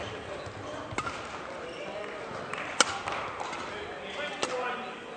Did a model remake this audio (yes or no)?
no